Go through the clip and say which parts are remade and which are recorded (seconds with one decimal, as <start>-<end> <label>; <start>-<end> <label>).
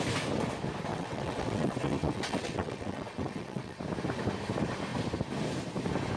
0.0-0.9 recorded; 0.9-3.8 remade; 3.8-6.2 recorded